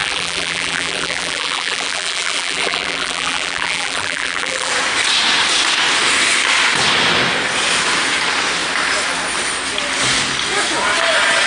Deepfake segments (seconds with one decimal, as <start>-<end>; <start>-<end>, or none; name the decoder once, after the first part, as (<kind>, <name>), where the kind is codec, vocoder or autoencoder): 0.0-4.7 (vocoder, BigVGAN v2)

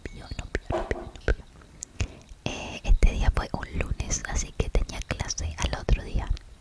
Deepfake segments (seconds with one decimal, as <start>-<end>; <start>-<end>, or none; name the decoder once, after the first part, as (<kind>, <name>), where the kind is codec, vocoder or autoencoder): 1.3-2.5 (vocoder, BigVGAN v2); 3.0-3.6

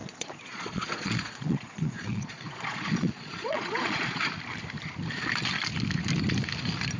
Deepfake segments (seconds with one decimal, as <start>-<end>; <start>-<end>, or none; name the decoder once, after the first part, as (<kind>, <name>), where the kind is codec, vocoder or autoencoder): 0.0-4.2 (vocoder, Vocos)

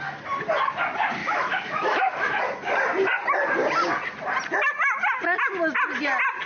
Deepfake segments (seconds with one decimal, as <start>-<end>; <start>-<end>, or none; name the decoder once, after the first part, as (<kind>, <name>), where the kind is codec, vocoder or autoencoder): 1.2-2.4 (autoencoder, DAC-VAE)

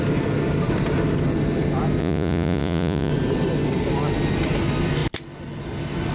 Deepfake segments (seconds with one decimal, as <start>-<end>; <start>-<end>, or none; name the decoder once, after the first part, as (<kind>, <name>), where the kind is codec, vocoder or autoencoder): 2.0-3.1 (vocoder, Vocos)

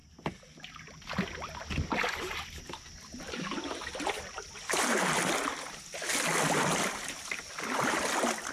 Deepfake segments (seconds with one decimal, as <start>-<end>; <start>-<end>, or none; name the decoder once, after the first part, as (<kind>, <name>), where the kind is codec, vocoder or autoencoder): none